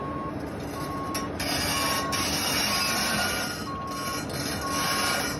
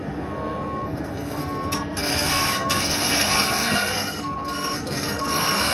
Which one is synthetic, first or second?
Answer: second